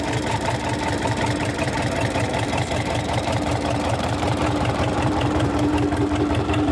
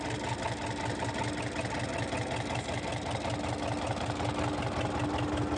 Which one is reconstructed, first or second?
first